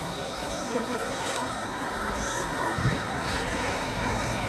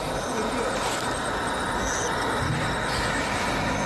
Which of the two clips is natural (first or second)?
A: second